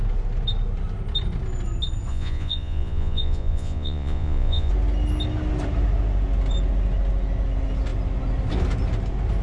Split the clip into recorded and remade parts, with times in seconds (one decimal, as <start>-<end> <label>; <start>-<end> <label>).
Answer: 0.0-2.1 recorded; 2.1-4.7 remade; 4.7-9.4 recorded